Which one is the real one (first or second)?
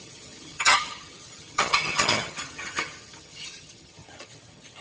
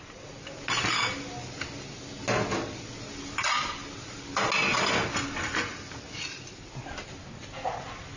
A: second